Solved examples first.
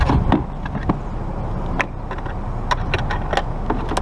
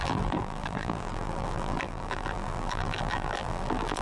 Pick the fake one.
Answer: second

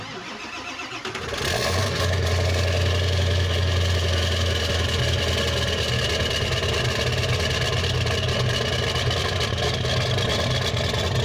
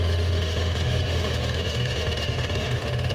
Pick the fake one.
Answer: second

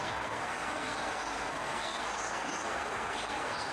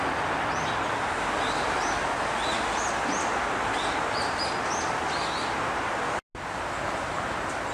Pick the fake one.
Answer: first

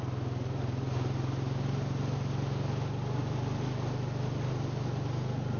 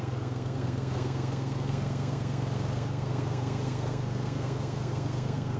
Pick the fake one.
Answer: second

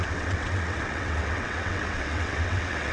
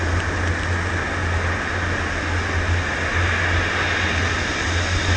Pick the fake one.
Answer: first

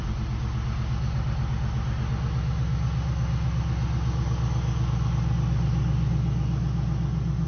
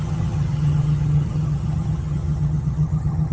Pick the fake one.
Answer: second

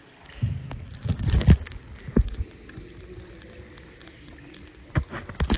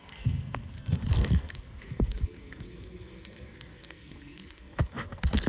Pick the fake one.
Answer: second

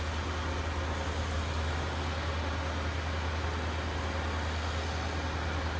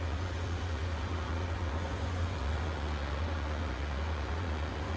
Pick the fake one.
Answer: second